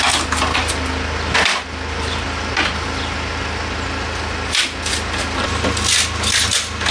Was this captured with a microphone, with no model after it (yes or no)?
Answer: yes